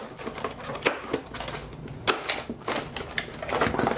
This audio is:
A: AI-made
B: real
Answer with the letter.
B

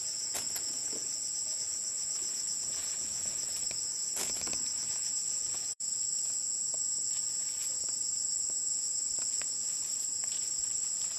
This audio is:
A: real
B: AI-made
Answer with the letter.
B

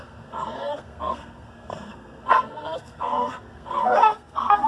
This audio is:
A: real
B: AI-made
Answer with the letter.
B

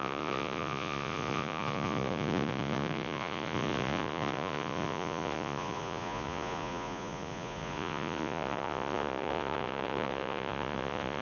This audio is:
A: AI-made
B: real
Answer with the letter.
A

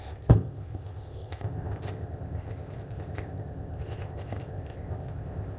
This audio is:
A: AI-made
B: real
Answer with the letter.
A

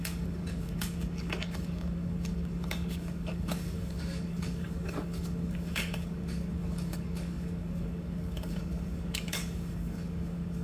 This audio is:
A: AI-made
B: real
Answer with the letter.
A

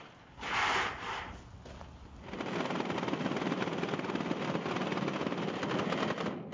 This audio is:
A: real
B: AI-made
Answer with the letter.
A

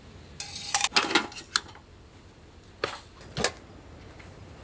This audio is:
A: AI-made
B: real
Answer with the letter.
B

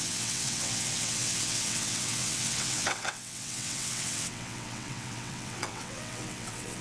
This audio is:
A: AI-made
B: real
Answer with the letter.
A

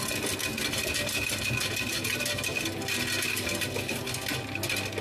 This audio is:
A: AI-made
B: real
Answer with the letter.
B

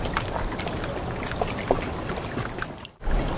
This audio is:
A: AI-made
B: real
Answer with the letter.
B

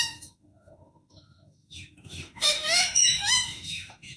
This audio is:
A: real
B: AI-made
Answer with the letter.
B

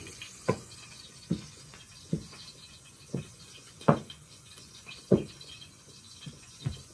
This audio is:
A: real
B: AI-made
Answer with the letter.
B